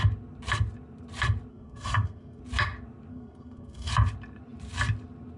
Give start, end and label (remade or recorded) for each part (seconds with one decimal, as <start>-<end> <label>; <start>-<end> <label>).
0.0-1.5 recorded; 1.5-2.4 remade; 2.4-3.1 recorded; 3.1-3.9 remade; 3.9-5.4 recorded